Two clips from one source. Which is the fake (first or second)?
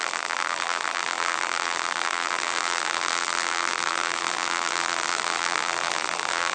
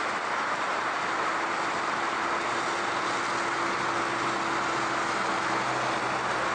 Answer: first